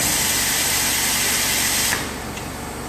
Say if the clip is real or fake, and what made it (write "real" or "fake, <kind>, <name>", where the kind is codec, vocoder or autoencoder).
real